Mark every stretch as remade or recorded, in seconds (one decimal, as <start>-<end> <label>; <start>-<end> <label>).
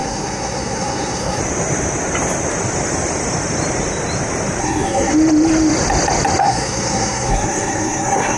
0.0-1.4 remade; 1.4-4.6 recorded; 4.6-5.1 remade; 5.1-6.4 recorded; 6.4-8.4 remade